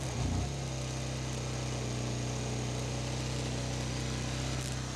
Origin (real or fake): real